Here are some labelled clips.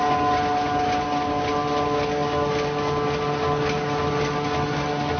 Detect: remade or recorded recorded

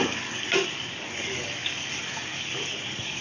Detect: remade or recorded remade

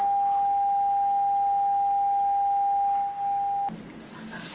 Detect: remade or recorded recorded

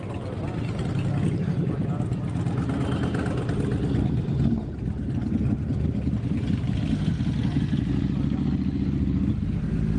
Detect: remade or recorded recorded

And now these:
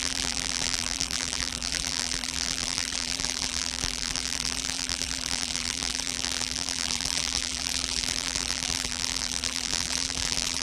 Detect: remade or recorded remade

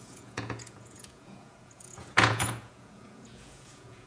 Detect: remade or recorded remade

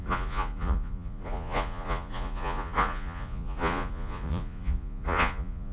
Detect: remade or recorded remade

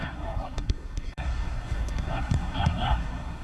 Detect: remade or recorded remade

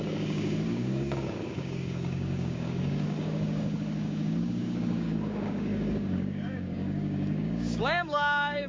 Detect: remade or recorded remade